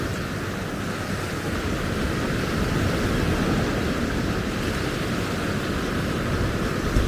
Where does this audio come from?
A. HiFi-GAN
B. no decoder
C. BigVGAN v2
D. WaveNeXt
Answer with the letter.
B